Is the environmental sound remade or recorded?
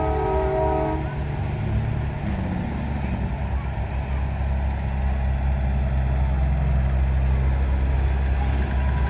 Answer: recorded